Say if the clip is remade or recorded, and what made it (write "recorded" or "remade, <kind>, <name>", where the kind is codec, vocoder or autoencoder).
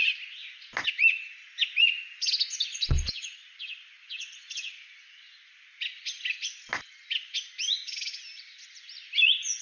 recorded